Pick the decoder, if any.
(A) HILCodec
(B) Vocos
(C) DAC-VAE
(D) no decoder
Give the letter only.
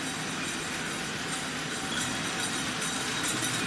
D